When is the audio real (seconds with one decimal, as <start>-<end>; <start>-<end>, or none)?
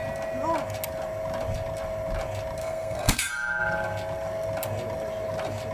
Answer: 0.0-2.6; 3.3-5.7